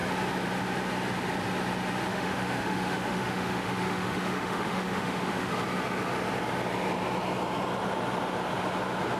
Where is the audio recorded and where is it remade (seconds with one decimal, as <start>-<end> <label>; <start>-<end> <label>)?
0.0-2.1 recorded; 2.1-5.5 remade; 5.5-9.2 recorded